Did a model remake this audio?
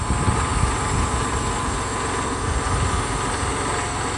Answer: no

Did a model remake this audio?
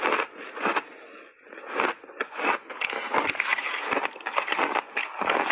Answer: no